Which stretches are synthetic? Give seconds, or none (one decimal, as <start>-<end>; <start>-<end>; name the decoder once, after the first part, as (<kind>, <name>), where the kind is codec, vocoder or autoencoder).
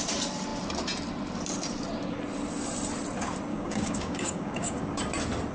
3.5-5.0 (codec, DAC)